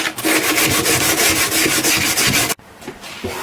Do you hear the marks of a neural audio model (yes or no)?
no